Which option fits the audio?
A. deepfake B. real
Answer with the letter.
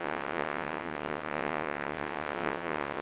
A